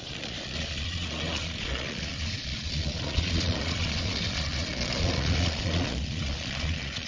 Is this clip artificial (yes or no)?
yes